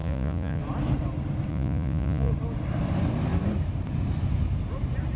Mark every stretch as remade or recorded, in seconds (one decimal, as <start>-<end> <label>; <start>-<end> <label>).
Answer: 0.0-0.6 remade; 0.6-1.5 recorded; 1.5-2.3 remade; 2.3-5.2 recorded